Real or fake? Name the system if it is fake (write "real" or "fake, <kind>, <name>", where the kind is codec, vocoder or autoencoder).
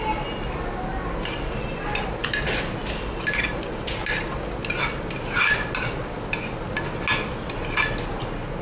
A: real